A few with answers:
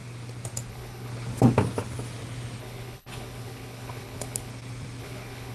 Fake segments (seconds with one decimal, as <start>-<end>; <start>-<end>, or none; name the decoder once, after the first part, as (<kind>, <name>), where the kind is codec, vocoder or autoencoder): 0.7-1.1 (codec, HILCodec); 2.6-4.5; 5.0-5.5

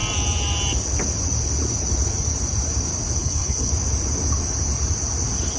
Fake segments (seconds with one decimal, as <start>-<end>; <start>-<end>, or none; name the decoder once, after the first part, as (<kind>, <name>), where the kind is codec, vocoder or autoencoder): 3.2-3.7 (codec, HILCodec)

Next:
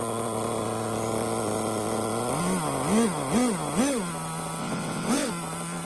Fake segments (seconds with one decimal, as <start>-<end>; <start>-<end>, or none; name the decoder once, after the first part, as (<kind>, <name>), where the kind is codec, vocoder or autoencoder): 4.6-5.3 (vocoder, WaveNeXt)

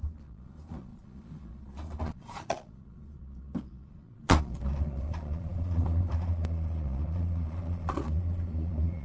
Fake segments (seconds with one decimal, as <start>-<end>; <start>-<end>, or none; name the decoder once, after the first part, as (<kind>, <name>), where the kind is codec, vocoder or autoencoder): 0.0-9.0 (vocoder, Vocos)